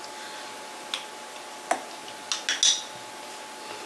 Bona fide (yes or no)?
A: yes